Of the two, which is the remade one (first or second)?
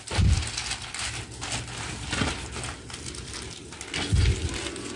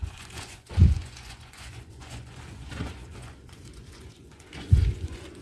second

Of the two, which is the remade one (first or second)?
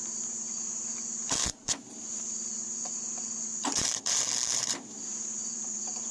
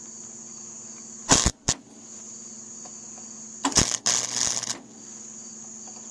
first